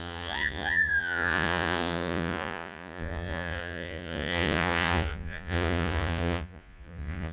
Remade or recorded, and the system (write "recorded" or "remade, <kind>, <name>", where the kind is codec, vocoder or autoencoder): remade, vocoder, Vocos